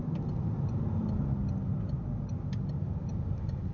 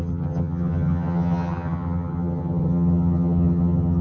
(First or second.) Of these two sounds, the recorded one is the first